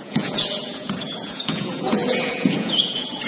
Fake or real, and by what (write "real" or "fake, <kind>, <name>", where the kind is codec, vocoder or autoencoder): fake, vocoder, Vocos